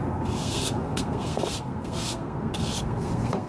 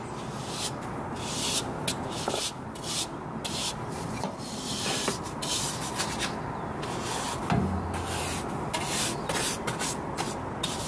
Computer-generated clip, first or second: first